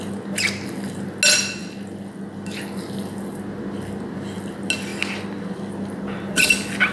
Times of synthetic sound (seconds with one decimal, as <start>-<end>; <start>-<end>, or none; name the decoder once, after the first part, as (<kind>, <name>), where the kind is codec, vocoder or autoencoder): none